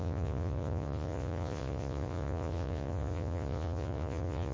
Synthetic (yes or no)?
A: yes